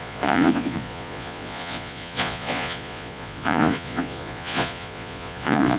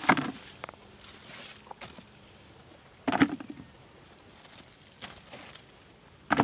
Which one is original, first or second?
second